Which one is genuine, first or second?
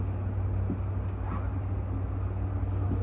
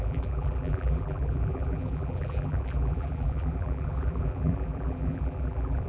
first